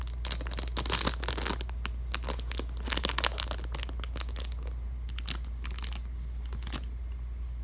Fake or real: real